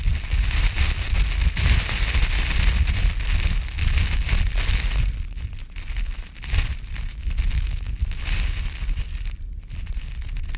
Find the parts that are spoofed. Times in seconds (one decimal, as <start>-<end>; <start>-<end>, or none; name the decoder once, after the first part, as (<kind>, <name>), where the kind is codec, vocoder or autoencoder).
7.1-7.9 (autoencoder, DAC-VAE)